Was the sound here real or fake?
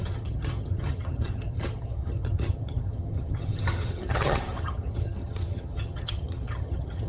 fake